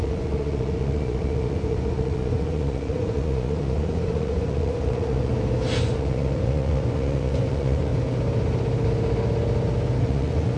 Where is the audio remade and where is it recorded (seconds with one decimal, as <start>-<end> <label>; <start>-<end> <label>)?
0.0-5.3 remade; 5.3-5.8 recorded; 5.8-7.9 remade; 7.9-10.0 recorded; 10.0-10.6 remade